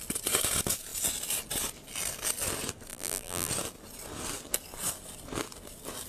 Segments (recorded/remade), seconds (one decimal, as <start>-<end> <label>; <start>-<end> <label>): 0.0-2.9 recorded; 2.9-3.5 remade; 3.5-6.1 recorded

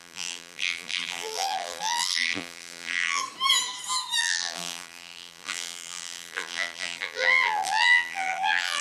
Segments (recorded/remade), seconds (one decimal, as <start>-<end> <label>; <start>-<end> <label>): 0.0-3.2 remade; 3.2-4.2 recorded; 4.2-8.8 remade

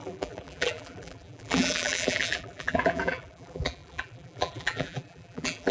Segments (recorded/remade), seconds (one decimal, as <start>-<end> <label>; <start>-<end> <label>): 0.0-5.7 remade

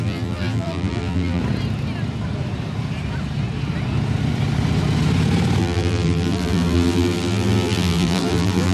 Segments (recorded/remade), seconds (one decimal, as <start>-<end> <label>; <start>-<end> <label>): 0.0-1.4 remade; 1.4-5.6 recorded; 5.6-8.7 remade

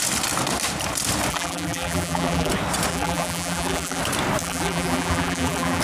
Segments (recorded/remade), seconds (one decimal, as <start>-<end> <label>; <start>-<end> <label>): 0.0-1.3 recorded; 1.3-2.5 remade; 2.5-2.9 recorded; 2.9-4.0 remade; 4.0-4.4 recorded; 4.4-5.8 remade